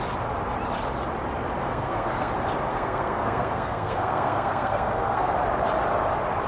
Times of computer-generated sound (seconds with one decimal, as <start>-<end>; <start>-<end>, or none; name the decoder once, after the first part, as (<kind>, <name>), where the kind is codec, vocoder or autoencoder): 1.6-2.3 (codec, SNAC); 2.7-5.3